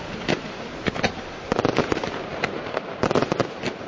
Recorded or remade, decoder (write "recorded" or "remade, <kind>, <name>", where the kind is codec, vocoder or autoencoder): remade, vocoder, BigVGAN v2